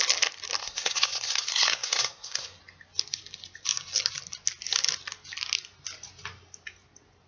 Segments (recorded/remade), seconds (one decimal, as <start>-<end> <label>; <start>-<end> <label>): 0.0-0.6 recorded; 0.6-2.6 remade; 2.6-7.3 recorded